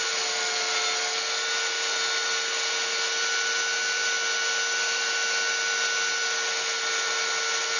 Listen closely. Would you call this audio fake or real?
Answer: real